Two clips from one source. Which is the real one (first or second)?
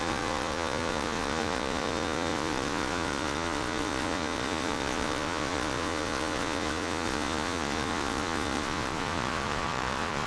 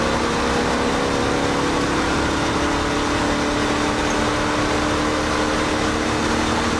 second